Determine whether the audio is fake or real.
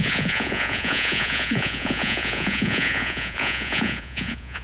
fake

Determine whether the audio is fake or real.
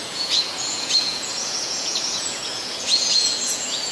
fake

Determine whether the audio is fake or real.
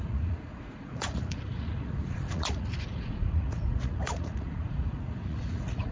fake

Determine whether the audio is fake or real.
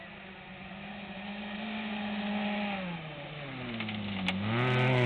real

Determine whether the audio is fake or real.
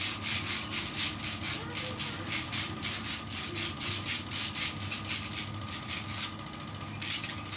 real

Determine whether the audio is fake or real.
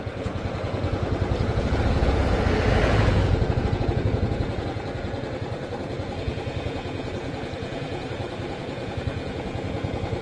fake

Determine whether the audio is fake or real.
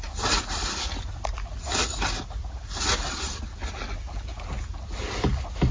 real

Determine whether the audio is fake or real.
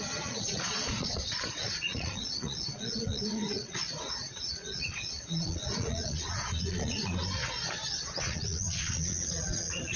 fake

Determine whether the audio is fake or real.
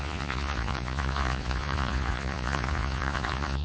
fake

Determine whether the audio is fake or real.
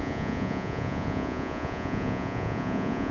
fake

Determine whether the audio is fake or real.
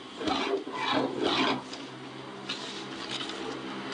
real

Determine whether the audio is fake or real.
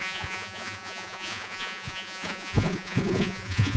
fake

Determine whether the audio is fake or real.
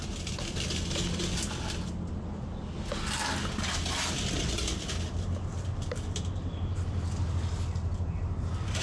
real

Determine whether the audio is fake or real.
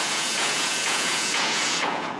fake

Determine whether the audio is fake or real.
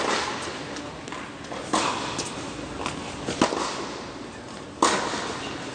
real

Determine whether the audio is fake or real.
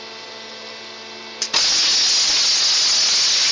real